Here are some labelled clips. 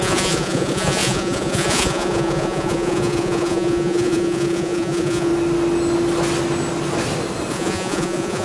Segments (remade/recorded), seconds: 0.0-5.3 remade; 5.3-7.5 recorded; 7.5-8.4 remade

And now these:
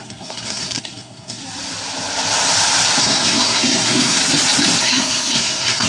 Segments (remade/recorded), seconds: 0.0-1.4 remade; 1.4-3.0 recorded; 3.0-4.2 remade; 4.2-4.8 recorded; 4.8-5.9 remade

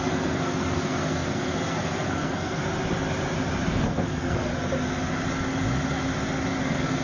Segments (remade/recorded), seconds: 0.0-2.6 remade; 2.6-3.7 recorded; 3.7-4.5 remade; 4.5-6.6 recorded; 6.6-7.0 remade

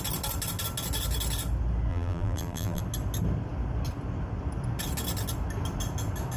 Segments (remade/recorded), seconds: 0.0-1.9 recorded; 1.9-2.8 remade; 2.8-6.4 recorded

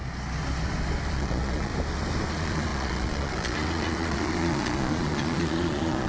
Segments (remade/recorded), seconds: 0.0-1.1 recorded; 1.1-1.7 remade; 1.7-2.3 recorded; 2.3-6.1 remade

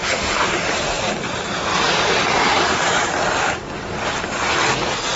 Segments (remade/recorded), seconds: 0.0-3.1 remade; 3.1-5.2 recorded